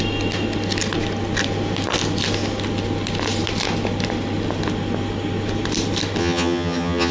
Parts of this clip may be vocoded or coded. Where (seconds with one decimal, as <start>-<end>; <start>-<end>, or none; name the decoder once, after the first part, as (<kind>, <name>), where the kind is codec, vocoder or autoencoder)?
6.2-7.1 (vocoder, HiFi-GAN)